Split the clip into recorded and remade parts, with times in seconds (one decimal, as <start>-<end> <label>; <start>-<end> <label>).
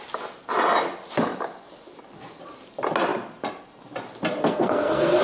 0.0-4.4 recorded; 4.4-5.2 remade